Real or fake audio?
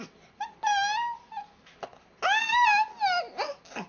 real